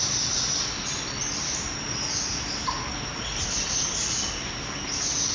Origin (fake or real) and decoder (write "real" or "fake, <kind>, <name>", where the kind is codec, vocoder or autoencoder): real